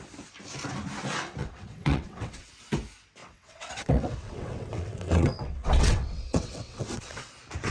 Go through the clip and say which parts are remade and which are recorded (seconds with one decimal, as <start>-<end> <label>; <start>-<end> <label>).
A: 0.0-1.4 recorded; 1.4-2.5 remade; 2.5-3.2 recorded; 3.2-7.3 remade; 7.3-7.7 recorded